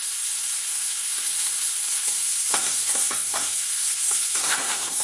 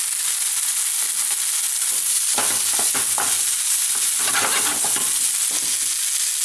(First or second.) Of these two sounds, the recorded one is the second